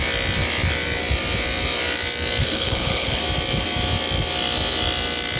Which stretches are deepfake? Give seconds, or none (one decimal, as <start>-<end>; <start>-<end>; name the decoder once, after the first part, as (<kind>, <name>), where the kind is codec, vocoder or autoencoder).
2.4-3.2 (codec, HILCodec)